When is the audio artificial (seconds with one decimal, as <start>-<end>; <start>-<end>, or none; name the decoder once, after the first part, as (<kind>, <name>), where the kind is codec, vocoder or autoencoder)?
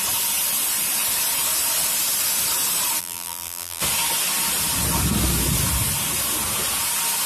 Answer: 3.0-3.8 (vocoder, BigVGAN v2)